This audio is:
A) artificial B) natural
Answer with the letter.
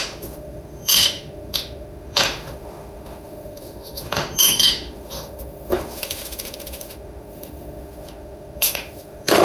A